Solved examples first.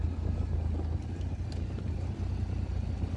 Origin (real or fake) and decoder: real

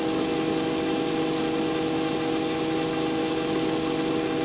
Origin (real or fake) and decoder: real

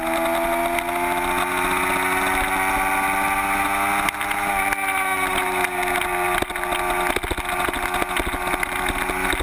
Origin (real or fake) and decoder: real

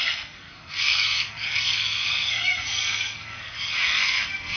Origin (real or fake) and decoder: fake, codec, SNAC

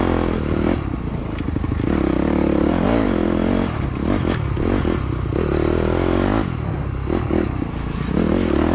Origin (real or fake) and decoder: real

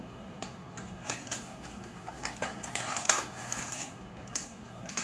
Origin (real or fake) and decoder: fake, codec, SNAC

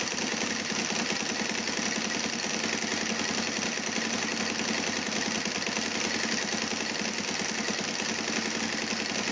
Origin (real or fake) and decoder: real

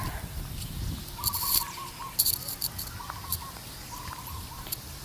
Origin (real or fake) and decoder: real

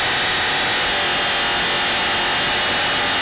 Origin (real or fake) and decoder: real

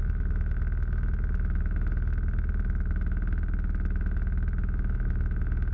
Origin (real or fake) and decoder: fake, autoencoder, DAC-VAE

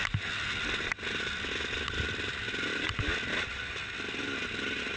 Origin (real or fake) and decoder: real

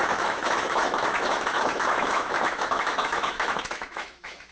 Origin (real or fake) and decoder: fake, autoencoder, DAC-VAE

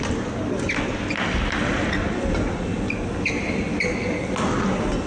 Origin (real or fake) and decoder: real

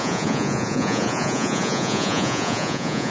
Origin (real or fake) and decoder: fake, vocoder, Vocos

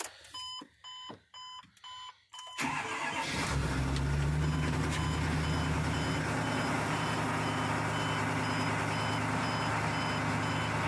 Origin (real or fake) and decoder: real